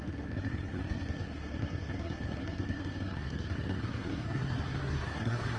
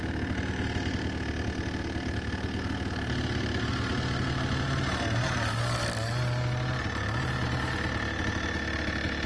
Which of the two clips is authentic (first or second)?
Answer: second